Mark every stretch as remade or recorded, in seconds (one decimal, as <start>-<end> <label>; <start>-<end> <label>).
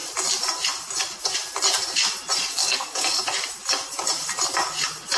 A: 0.0-2.6 recorded; 2.6-3.2 remade; 3.2-5.2 recorded